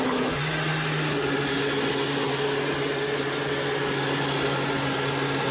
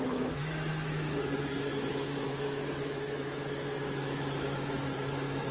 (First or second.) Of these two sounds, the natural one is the first